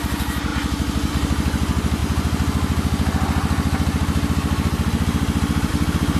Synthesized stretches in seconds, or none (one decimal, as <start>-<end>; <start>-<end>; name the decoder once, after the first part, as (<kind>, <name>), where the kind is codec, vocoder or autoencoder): none